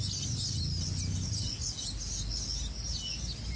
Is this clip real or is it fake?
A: real